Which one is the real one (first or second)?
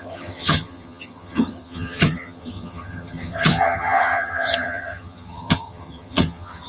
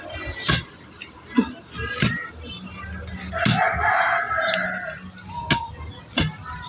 second